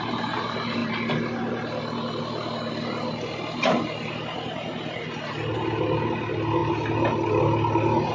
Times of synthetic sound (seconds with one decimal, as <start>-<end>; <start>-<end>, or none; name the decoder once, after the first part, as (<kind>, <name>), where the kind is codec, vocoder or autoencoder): none